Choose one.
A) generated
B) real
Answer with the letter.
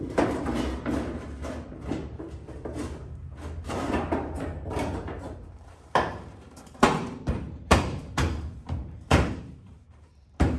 A